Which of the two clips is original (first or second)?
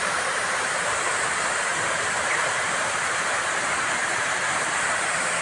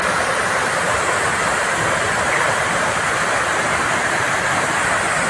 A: second